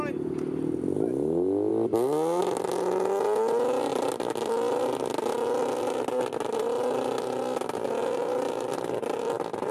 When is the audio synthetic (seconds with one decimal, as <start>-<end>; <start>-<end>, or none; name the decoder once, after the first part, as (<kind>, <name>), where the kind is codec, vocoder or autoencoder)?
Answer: none